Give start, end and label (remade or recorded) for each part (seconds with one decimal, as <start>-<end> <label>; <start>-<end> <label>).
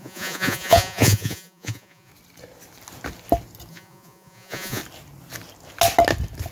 0.0-2.1 remade; 2.1-3.7 recorded; 3.7-4.8 remade; 4.8-6.5 recorded